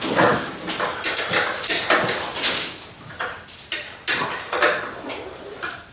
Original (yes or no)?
no